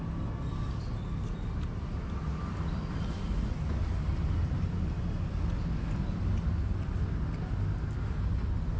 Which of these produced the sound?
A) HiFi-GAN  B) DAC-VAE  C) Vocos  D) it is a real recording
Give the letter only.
D